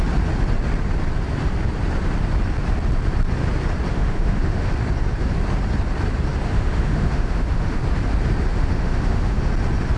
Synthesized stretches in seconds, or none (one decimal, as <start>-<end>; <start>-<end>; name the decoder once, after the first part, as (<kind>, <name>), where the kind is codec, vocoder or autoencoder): 3.9-4.7 (autoencoder, DAC-VAE); 6.5-7.8; 8.5-9.5